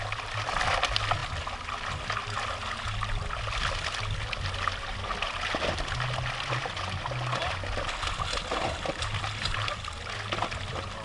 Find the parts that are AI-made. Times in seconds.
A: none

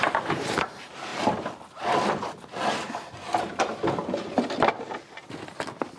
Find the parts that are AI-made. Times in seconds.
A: none